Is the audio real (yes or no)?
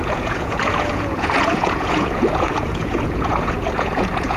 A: no